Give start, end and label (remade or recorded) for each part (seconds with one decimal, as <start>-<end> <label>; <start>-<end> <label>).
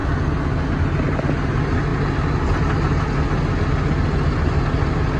0.0-5.2 recorded